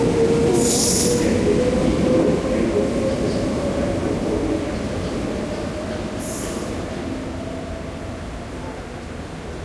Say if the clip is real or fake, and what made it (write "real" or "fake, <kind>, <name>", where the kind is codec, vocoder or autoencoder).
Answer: real